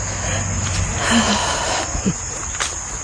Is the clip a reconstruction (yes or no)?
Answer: no